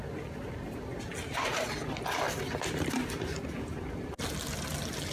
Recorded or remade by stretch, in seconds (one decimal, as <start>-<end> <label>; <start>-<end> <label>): 0.0-5.1 recorded